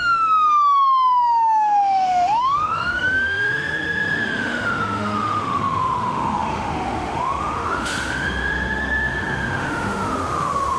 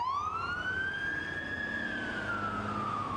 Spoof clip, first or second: first